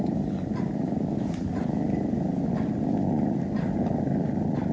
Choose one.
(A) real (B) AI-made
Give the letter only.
A